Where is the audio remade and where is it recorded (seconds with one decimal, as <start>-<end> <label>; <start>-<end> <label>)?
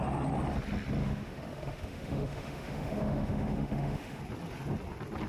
0.0-1.0 recorded; 1.0-4.2 remade; 4.2-5.3 recorded